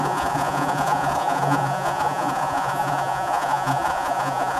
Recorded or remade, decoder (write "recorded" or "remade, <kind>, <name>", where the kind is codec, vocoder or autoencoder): remade, vocoder, Vocos